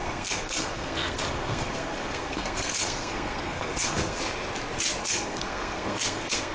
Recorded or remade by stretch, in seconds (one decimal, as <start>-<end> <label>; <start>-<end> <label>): 0.0-4.2 remade; 4.2-5.0 recorded; 5.0-6.5 remade